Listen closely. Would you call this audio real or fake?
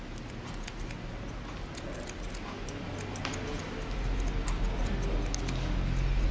real